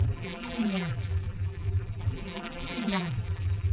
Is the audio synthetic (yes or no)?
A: yes